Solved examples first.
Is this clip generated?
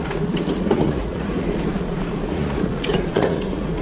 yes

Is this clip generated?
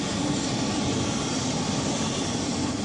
no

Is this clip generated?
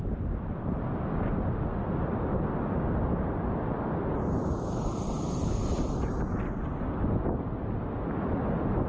no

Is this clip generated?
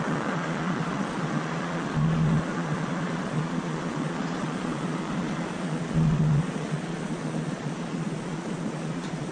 yes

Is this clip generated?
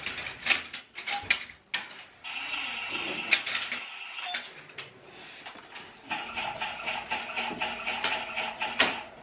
no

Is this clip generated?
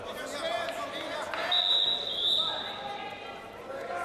no